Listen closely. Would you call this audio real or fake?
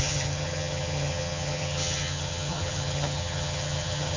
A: fake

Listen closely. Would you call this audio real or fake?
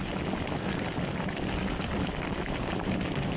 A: real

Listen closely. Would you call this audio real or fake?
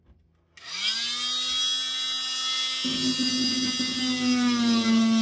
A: real